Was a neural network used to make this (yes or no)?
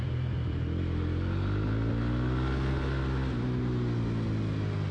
no